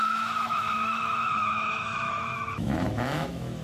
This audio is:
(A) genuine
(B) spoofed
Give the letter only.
B